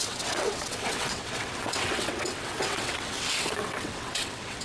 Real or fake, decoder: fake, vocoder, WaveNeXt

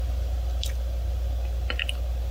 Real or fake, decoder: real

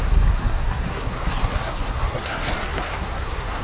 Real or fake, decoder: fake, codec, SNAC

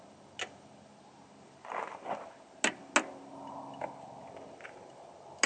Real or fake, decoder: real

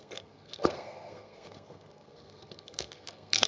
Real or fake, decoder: fake, codec, SNAC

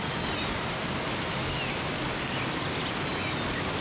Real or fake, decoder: real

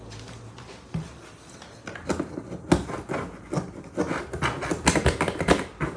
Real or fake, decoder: real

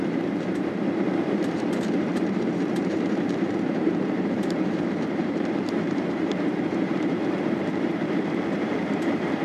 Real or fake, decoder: fake, vocoder, BigVGAN v2